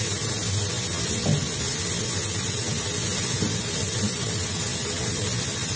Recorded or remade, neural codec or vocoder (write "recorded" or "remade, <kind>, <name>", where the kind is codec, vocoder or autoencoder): recorded